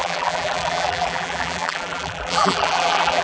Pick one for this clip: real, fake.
fake